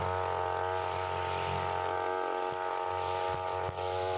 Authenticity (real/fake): real